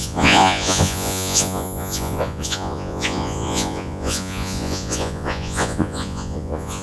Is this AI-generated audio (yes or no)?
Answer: yes